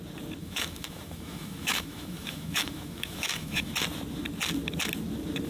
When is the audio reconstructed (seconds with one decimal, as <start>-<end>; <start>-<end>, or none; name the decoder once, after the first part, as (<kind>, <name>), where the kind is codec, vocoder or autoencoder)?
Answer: 0.4-3.7 (autoencoder, DAC-VAE)